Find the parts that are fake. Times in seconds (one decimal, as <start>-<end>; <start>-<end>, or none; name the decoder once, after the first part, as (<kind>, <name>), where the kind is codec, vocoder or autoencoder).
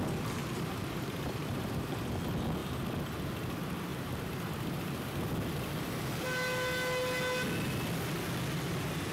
0.4-1.9 (vocoder, BigVGAN v2); 3.9-5.2